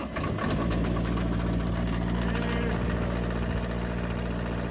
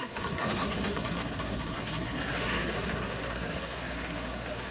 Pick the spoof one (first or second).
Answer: second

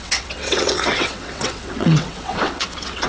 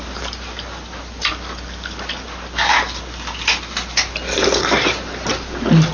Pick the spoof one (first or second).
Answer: first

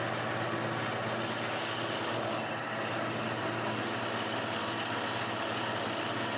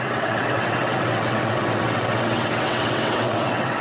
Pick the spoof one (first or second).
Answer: second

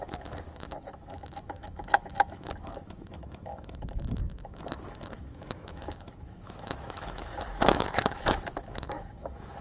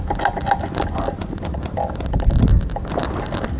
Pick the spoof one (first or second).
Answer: first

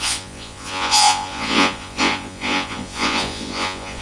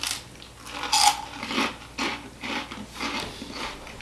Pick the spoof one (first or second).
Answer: first